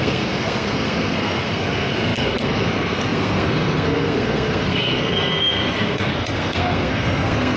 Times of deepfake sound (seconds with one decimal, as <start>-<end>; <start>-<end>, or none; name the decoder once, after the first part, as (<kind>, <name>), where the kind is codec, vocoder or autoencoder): 0.0-7.6 (codec, SNAC)